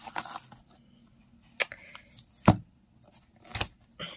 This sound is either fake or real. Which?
real